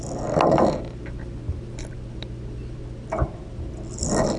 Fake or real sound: real